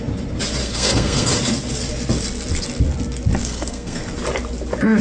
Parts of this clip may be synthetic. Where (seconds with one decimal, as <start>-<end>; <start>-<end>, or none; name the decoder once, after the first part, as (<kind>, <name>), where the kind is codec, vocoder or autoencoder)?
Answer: 0.6-1.3 (codec, SNAC); 3.4-4.0

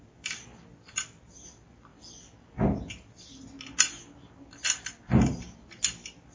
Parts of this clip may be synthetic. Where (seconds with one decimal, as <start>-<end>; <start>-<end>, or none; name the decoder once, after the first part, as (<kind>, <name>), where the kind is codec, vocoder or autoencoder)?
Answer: none

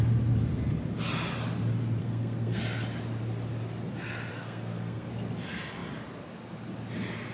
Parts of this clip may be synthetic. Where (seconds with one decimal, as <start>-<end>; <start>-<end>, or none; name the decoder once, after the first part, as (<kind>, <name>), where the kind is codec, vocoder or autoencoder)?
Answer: 2.0-2.6 (codec, SNAC); 4.3-5.1